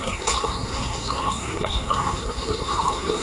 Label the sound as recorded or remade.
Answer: remade